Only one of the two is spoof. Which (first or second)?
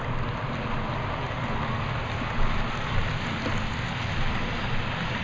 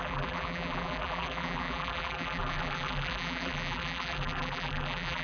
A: second